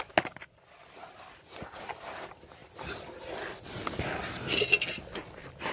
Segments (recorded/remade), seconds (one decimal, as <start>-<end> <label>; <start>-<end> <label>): 0.0-5.7 recorded